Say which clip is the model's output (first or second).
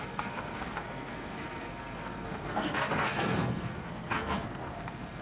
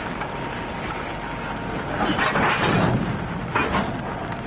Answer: first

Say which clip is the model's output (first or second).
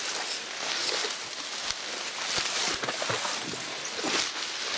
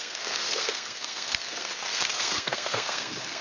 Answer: second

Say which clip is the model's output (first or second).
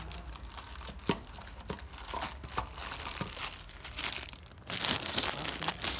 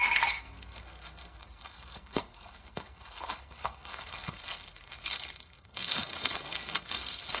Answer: second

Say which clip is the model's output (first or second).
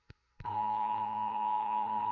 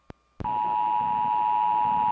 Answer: first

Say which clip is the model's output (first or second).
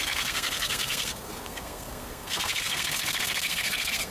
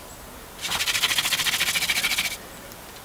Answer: first